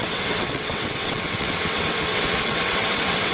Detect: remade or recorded remade